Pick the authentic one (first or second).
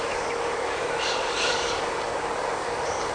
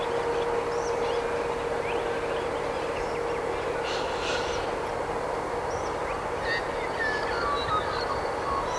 second